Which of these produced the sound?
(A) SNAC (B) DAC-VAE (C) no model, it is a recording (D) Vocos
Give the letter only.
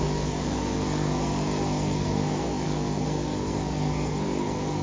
A